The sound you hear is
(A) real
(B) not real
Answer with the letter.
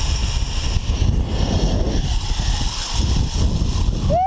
A